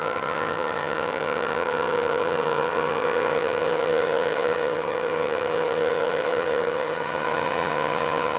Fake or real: fake